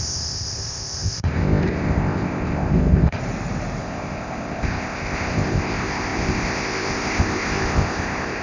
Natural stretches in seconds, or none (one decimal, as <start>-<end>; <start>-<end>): 3.2-3.8